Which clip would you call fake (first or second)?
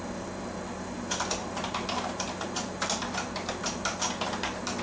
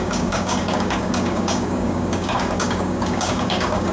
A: second